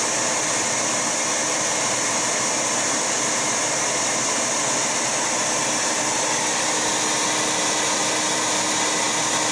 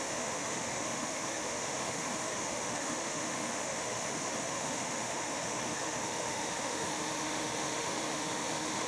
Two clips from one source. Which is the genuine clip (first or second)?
first